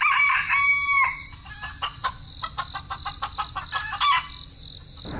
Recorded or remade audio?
recorded